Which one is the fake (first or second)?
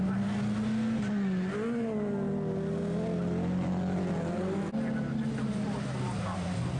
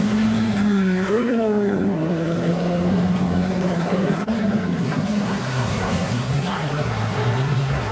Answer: second